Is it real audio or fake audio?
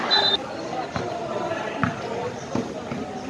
real